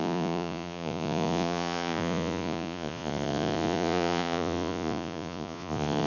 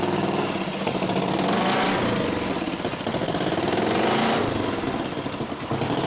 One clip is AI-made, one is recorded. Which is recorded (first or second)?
second